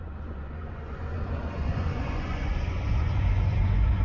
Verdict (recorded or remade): remade